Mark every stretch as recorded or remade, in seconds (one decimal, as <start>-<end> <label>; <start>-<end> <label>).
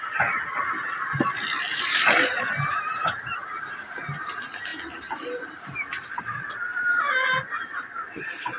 0.0-1.7 recorded; 1.7-4.1 remade; 4.1-6.7 recorded; 6.7-8.6 remade